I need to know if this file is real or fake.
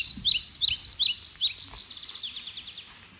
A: real